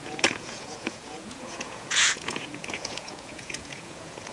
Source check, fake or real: fake